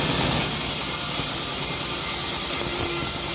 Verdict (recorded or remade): recorded